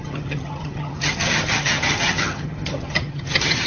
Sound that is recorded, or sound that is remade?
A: remade